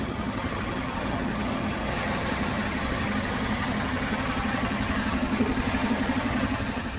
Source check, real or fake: fake